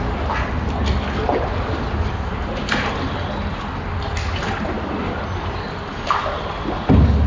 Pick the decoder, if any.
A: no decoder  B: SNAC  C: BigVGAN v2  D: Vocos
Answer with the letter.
A